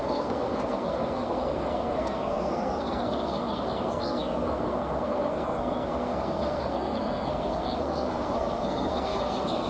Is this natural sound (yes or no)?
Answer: no